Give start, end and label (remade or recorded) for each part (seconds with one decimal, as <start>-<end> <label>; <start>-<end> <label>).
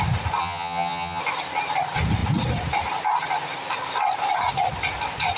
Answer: 0.0-0.4 recorded; 0.4-1.2 remade; 1.2-5.4 recorded